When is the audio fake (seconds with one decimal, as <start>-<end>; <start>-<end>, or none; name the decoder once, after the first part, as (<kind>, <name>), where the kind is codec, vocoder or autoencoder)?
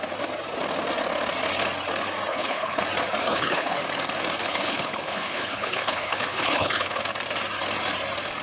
2.3-2.8 (codec, HILCodec); 3.2-3.8; 4.4-7.0